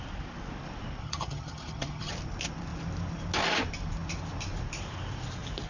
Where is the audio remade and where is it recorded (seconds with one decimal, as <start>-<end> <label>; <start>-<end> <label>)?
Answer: 0.0-1.0 recorded; 1.0-2.1 remade; 2.1-5.7 recorded

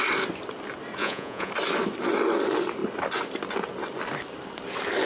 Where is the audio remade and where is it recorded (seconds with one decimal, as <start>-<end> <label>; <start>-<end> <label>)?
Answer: 0.0-1.0 recorded; 1.0-1.5 remade; 1.5-5.1 recorded

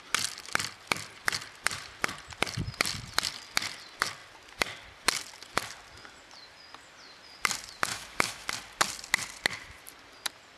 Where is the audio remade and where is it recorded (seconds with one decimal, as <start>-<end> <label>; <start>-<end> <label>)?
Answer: 0.0-7.9 recorded; 7.9-8.5 remade; 8.5-10.6 recorded